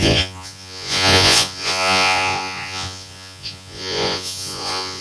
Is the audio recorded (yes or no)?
no